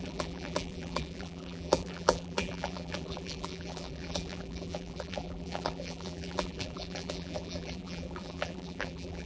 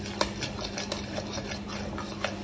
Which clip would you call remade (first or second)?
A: first